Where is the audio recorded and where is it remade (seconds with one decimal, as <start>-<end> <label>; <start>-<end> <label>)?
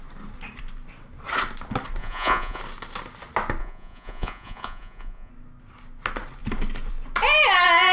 0.0-2.0 recorded; 2.0-2.6 remade; 2.6-3.6 recorded; 3.6-5.3 remade; 5.3-7.9 recorded